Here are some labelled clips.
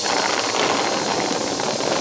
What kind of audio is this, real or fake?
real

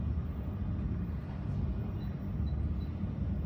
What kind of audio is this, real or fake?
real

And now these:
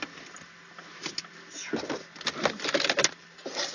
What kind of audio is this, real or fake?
real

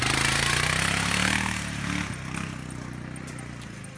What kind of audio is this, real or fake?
real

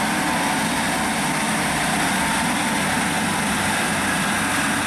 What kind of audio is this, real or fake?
real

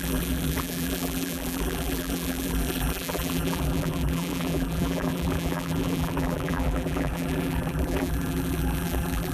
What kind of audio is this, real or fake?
fake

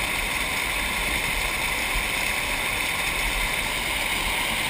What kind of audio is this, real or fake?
real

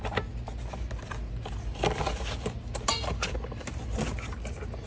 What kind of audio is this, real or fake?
real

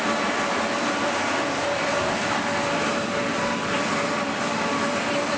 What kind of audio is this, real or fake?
fake